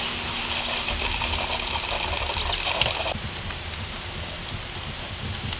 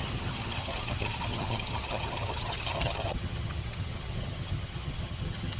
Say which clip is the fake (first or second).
second